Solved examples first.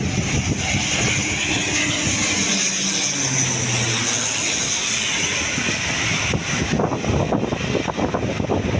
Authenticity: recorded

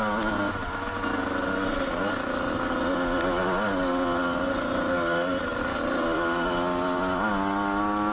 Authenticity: recorded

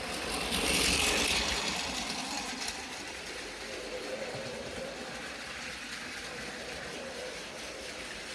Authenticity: recorded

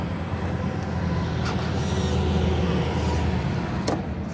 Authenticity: recorded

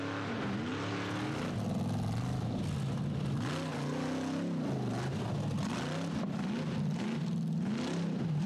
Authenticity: recorded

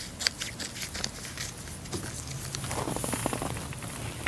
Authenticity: recorded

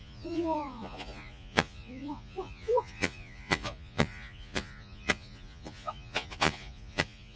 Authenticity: remade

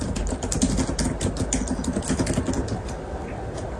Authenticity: recorded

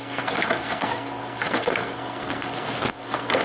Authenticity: remade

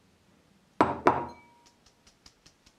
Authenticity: recorded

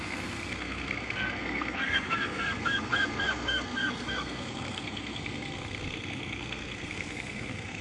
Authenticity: remade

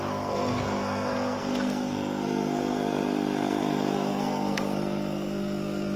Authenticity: remade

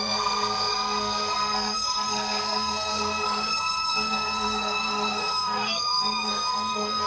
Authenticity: remade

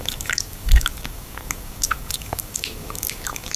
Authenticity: remade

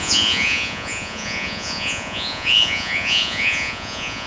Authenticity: remade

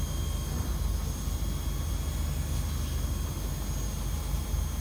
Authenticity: recorded